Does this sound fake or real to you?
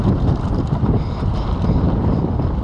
real